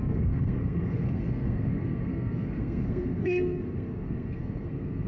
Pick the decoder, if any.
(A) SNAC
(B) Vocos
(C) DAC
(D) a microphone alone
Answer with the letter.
A